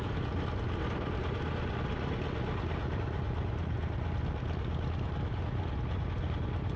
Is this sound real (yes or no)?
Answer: yes